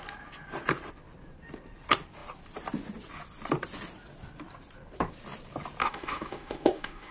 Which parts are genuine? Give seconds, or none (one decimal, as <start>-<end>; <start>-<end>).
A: 0.0-5.8